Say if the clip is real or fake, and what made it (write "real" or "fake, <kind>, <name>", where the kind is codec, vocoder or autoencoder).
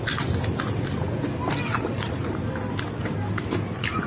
real